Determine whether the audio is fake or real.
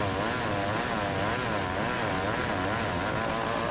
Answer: real